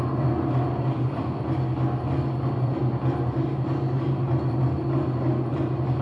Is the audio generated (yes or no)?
no